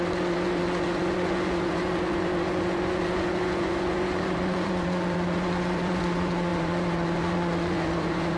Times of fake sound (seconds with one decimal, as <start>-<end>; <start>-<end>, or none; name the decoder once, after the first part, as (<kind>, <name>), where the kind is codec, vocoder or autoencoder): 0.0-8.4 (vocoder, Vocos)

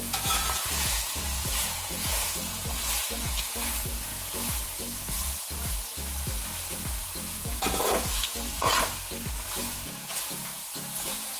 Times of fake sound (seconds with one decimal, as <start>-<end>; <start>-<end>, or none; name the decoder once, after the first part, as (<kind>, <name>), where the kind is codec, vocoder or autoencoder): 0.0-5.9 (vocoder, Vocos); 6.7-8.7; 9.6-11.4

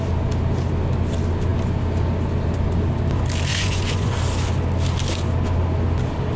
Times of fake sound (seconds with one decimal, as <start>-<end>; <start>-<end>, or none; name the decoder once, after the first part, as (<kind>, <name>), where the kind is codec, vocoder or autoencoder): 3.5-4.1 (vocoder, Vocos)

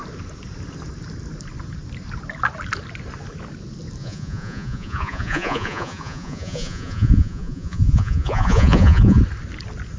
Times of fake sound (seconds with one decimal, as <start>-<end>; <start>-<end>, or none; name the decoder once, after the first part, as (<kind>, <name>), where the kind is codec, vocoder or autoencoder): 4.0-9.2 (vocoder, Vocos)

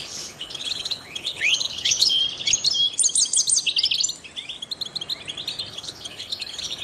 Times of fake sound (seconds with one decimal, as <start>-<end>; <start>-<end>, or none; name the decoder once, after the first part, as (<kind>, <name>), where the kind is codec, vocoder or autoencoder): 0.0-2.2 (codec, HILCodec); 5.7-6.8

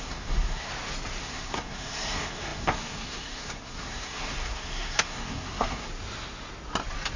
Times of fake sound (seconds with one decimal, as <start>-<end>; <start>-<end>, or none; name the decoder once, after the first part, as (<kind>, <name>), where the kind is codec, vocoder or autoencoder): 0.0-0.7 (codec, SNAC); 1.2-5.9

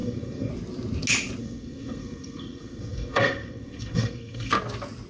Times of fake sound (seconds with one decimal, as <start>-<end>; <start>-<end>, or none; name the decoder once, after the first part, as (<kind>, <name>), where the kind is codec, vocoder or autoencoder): 0.0-0.5 (codec, SNAC); 1.4-4.5